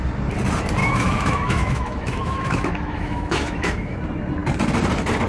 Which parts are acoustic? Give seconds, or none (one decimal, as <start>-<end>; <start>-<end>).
0.0-0.8; 4.0-5.3